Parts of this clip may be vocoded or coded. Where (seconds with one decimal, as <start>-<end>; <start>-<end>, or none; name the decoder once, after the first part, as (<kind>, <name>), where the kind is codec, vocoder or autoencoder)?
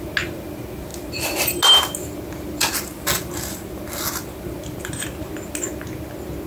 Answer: none